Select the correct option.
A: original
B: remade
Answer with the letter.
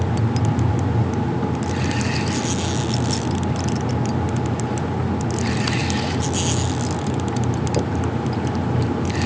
A